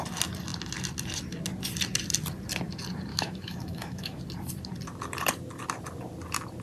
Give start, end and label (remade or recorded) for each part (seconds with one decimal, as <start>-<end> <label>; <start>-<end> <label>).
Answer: 0.0-3.1 recorded; 3.1-4.2 remade; 4.2-6.6 recorded